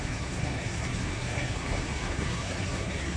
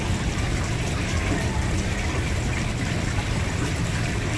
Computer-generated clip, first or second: first